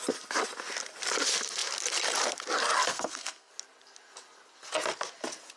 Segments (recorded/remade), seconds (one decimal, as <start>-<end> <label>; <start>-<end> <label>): 0.0-2.9 recorded; 2.9-3.5 remade; 3.5-5.6 recorded